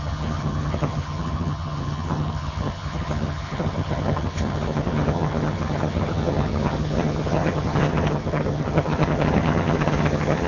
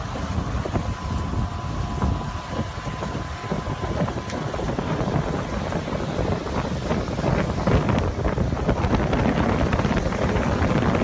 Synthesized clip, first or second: first